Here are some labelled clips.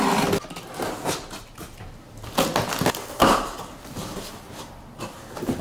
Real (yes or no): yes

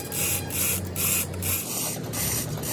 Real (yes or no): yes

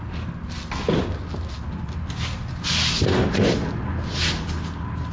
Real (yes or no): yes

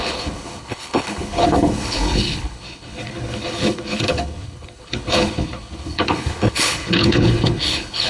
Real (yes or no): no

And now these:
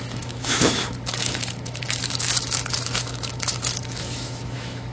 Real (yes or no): no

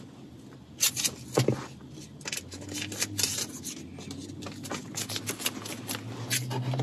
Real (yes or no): yes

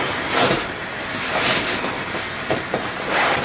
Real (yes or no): yes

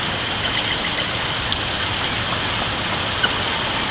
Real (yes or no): yes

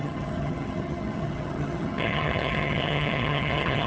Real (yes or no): no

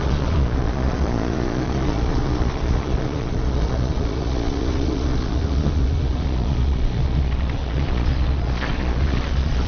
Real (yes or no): no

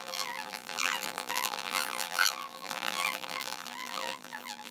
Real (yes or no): no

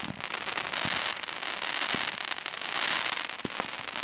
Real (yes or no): yes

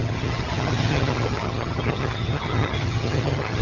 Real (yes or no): no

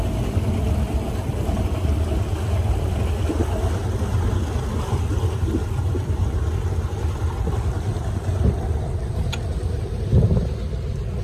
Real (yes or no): yes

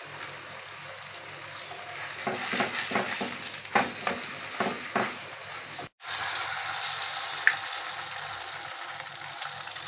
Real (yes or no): yes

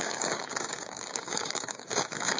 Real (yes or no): no